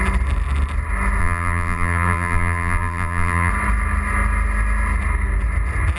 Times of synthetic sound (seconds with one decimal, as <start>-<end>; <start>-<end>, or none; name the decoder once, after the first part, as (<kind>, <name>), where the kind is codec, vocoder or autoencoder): 1.2-3.5 (vocoder, BigVGAN v2)